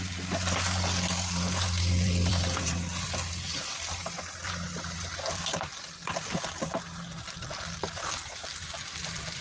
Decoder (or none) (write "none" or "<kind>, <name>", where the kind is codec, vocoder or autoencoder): vocoder, BigVGAN v2